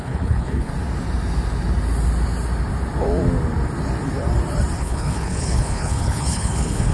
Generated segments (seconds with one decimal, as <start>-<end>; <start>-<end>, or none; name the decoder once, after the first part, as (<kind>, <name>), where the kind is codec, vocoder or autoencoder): 0.0-0.7 (codec, HILCodec); 4.8-6.9